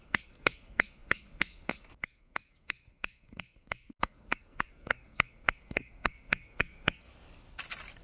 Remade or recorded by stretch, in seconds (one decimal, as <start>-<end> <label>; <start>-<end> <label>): 0.0-7.1 remade; 7.1-8.0 recorded

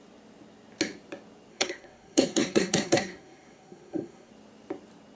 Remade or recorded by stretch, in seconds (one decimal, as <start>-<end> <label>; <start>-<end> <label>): 0.0-1.5 recorded; 1.5-4.3 remade; 4.3-5.1 recorded

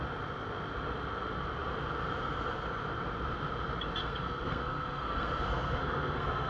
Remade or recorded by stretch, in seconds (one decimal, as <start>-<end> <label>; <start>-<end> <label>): 0.0-4.0 recorded; 4.0-6.5 remade

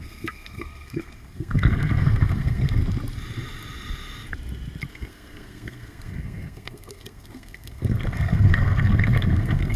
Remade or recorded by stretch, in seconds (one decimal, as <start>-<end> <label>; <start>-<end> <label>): 0.0-2.8 remade; 2.8-4.9 recorded; 4.9-9.8 remade